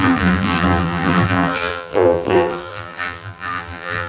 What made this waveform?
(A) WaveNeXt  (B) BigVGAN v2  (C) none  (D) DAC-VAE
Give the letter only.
B